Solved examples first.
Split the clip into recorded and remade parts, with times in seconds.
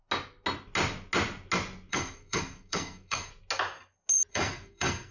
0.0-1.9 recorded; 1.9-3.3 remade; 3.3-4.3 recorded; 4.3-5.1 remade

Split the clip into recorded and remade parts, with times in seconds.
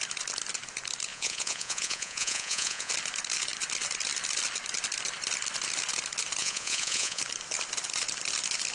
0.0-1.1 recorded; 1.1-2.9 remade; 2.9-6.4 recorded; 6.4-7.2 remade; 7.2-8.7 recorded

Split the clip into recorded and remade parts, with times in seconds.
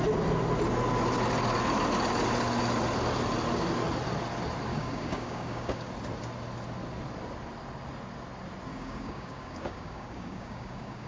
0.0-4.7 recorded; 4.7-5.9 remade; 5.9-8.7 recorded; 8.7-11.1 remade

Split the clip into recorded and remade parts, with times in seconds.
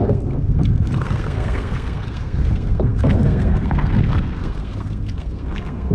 0.0-5.9 remade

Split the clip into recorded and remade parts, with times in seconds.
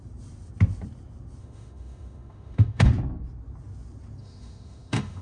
0.0-1.4 recorded; 1.4-2.9 remade; 2.9-4.2 recorded; 4.2-5.2 remade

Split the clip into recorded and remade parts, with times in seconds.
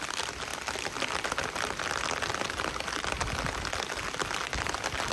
0.0-5.1 recorded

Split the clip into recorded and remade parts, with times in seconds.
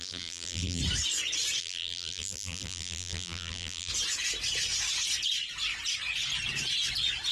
0.0-0.8 remade; 0.8-1.6 recorded; 1.6-3.9 remade; 3.9-7.3 recorded